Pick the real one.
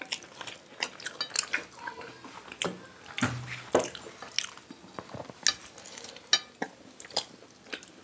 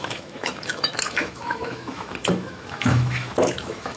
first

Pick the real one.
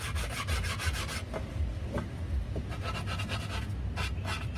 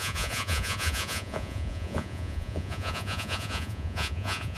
first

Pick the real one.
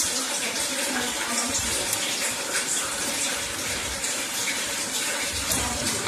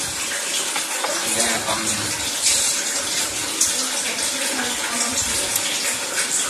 second